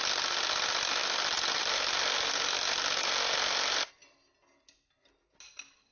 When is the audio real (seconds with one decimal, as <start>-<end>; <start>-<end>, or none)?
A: 0.0-5.9